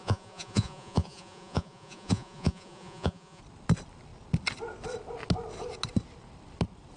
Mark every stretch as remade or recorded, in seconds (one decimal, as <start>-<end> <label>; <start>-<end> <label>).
0.0-3.4 remade; 3.4-7.0 recorded